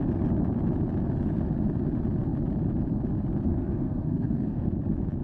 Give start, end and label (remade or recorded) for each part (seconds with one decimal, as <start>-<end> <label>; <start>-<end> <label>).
0.0-3.5 recorded; 3.5-4.7 remade; 4.7-5.2 recorded